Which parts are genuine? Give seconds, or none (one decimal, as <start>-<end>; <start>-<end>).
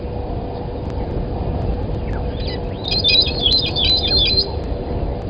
0.0-5.3